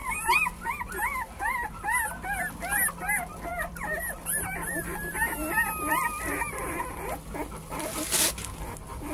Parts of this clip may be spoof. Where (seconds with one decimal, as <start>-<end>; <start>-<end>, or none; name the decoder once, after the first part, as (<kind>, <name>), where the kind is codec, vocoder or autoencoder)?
0.0-0.7 (vocoder, BigVGAN v2); 3.5-5.0